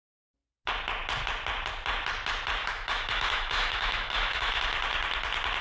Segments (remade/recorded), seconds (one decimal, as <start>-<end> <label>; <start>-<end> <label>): 0.0-2.6 recorded; 2.6-4.6 remade; 4.6-5.6 recorded